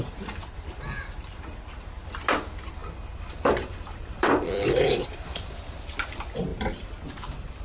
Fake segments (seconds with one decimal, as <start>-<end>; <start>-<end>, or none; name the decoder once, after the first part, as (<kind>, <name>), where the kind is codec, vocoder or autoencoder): 2.8-5.5 (vocoder, BigVGAN v2)